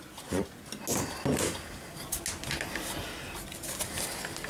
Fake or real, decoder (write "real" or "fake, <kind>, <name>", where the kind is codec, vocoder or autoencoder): real